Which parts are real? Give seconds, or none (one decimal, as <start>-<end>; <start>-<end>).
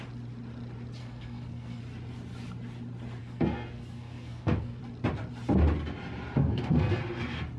0.0-1.0; 1.8-3.2; 4.8-6.4; 7.0-7.6